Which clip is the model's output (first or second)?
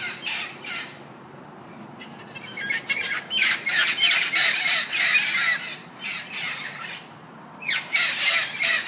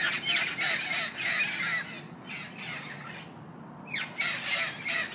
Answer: first